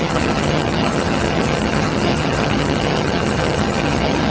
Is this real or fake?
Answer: fake